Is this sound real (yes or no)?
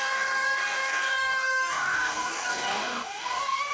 no